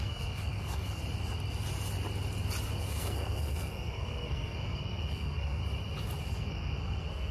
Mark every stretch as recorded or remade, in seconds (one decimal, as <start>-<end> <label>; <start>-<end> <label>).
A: 0.0-1.0 remade; 1.0-2.7 recorded; 2.7-5.6 remade; 5.6-6.3 recorded; 6.3-7.3 remade